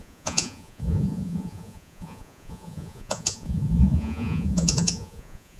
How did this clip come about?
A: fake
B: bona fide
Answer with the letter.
A